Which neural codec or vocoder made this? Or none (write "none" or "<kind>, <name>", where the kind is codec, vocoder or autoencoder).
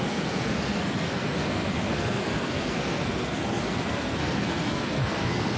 codec, SNAC